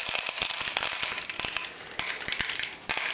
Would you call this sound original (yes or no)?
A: yes